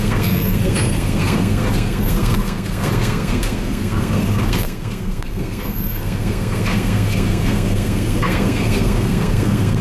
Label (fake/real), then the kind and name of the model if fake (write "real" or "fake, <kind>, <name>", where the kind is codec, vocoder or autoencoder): fake, codec, SNAC